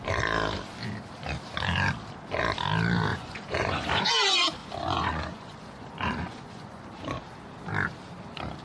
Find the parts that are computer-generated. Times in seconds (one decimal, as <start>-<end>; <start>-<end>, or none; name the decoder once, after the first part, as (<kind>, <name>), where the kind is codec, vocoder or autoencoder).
3.1-4.1 (vocoder, Vocos); 4.6-6.8